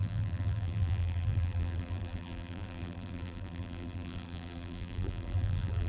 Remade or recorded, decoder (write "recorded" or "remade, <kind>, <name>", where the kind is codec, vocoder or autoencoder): remade, vocoder, BigVGAN v2